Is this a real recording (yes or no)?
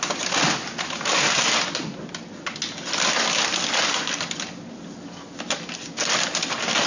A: yes